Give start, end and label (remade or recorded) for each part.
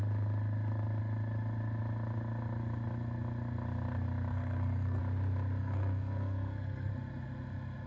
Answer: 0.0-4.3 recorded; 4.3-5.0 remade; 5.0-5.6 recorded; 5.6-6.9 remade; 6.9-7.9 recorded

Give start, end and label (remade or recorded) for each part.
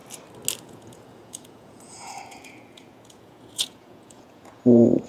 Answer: 0.0-0.6 recorded; 0.6-5.1 remade